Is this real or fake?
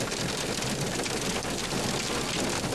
real